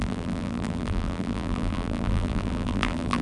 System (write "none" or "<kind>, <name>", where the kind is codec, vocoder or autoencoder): vocoder, BigVGAN v2